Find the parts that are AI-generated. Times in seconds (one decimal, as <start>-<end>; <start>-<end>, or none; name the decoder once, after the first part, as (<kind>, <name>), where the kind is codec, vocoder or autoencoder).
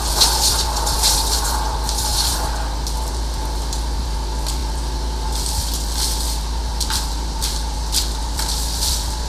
none